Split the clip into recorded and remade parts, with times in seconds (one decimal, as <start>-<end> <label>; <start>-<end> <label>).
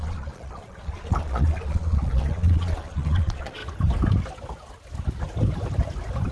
0.0-3.6 remade; 3.6-6.3 recorded